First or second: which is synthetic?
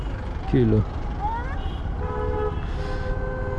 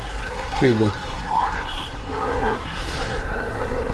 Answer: second